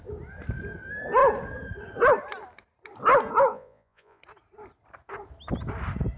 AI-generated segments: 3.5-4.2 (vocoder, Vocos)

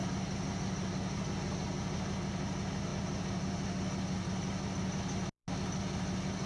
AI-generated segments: none

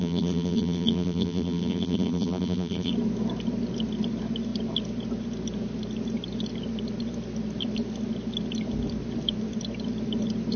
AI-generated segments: 0.0-2.9 (vocoder, BigVGAN v2)

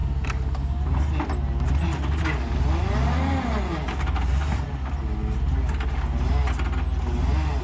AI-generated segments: none

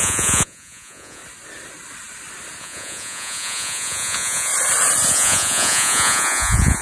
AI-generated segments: 0.0-1.2 (vocoder, Vocos); 2.6-4.5; 5.1-6.8